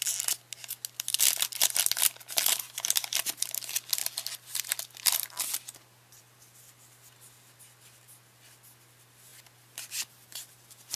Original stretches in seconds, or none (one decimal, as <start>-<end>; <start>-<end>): 0.0-10.9